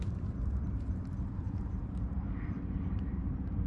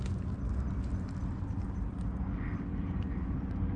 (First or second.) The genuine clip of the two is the second